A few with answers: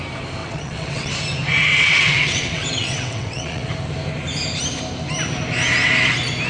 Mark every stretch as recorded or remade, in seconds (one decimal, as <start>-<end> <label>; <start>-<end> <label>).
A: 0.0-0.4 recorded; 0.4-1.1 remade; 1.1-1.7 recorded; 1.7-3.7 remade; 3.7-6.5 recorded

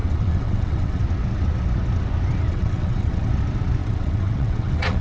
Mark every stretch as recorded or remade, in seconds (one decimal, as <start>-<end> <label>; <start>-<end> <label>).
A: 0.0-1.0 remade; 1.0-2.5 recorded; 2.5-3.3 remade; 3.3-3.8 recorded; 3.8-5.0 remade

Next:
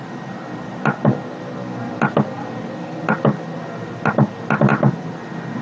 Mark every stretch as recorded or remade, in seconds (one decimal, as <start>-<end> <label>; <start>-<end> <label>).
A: 0.0-5.6 recorded